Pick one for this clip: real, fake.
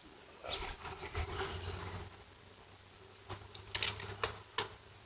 real